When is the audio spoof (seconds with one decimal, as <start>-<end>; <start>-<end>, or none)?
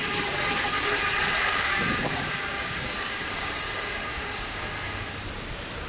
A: 1.5-3.6; 4.1-4.6